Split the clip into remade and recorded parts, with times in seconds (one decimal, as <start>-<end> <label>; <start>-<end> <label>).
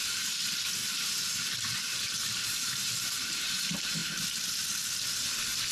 0.0-0.8 recorded; 0.8-3.4 remade; 3.4-5.7 recorded